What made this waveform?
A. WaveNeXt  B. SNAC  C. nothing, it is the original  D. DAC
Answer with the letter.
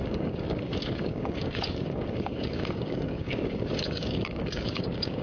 D